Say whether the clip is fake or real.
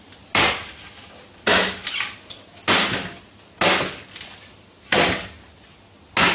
real